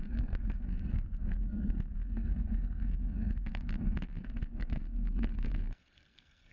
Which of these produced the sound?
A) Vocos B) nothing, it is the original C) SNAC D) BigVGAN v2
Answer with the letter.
C